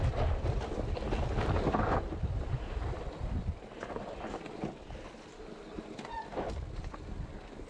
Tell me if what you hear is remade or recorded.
recorded